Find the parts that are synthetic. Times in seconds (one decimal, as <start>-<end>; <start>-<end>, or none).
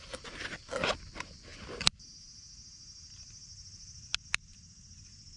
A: none